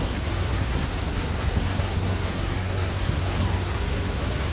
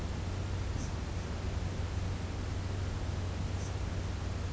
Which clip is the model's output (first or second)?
first